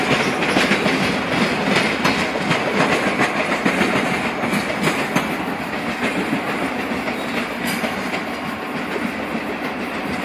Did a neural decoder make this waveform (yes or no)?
no